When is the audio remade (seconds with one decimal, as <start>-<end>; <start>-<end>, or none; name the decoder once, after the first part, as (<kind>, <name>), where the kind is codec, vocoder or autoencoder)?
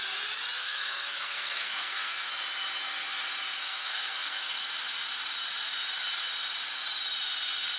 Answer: 0.6-2.3 (codec, SNAC); 3.6-4.6